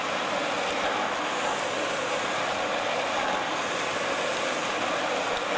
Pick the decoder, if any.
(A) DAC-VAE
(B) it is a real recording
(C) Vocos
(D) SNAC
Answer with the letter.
B